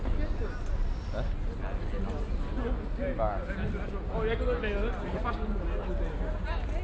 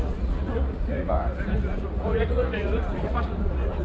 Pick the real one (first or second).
first